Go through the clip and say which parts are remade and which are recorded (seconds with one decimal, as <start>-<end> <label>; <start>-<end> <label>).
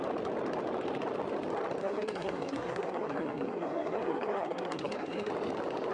0.0-1.8 recorded; 1.8-5.3 remade; 5.3-5.9 recorded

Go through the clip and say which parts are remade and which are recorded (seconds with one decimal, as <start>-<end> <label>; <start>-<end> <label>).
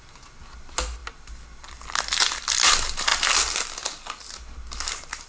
0.0-5.3 recorded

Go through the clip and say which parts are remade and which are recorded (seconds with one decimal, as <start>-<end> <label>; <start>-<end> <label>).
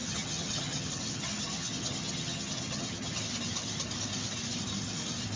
0.0-3.2 remade; 3.2-5.4 recorded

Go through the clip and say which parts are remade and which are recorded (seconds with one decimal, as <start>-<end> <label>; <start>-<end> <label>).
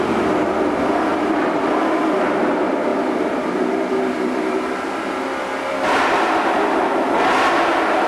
0.0-1.1 recorded; 1.1-1.8 remade; 1.8-2.9 recorded; 2.9-6.9 remade; 6.9-8.1 recorded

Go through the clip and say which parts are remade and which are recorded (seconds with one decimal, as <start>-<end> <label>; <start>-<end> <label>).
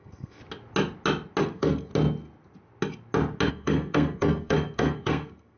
0.0-0.4 remade; 0.4-1.4 recorded; 1.4-1.9 remade; 1.9-3.5 recorded; 3.5-5.6 remade